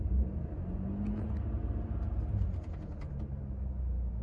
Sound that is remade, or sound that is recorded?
recorded